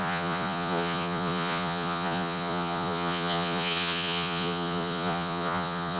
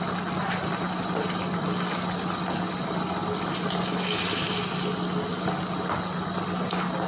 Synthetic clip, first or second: first